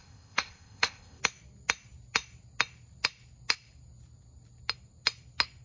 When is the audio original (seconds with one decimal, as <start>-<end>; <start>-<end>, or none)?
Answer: 1.2-5.6